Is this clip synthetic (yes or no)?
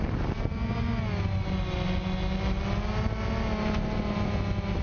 no